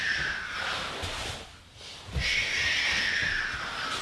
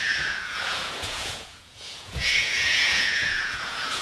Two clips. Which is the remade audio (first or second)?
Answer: second